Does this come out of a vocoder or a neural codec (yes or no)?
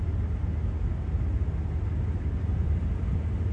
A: no